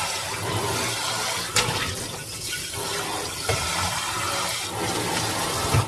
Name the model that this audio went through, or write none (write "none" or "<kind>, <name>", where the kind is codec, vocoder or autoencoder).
none